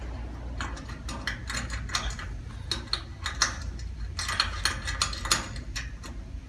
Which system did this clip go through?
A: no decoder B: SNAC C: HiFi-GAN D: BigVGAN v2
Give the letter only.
A